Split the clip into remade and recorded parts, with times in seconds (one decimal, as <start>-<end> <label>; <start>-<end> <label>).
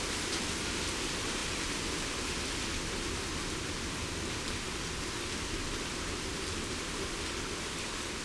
0.0-8.2 recorded